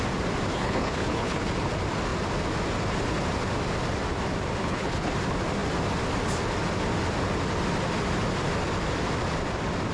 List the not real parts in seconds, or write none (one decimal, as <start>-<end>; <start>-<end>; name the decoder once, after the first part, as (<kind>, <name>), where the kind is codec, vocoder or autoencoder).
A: 0.5-1.5 (codec, HILCodec); 4.6-5.1